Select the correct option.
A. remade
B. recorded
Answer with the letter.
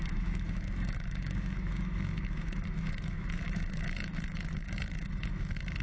A